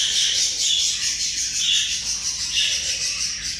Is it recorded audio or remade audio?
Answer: recorded